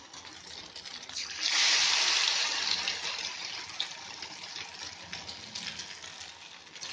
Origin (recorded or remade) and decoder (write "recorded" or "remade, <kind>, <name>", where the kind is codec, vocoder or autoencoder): recorded